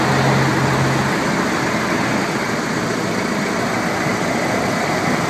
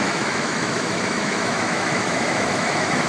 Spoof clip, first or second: second